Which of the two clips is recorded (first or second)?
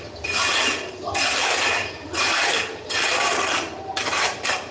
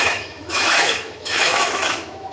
first